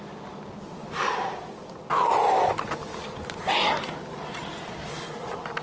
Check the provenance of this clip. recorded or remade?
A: recorded